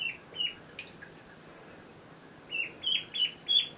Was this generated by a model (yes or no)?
no